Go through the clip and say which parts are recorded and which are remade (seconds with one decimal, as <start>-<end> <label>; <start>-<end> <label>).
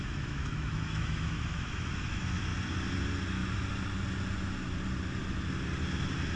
0.0-2.5 remade; 2.5-6.4 recorded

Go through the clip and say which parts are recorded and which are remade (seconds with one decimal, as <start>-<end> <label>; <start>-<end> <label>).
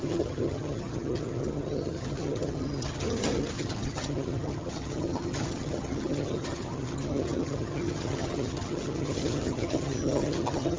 0.0-10.8 remade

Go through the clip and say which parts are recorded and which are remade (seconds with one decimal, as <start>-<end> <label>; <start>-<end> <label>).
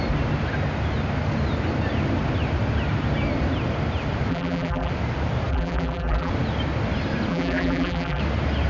0.0-4.3 recorded; 4.3-4.9 remade; 4.9-5.5 recorded; 5.5-6.3 remade; 6.3-7.3 recorded; 7.3-8.2 remade; 8.2-8.7 recorded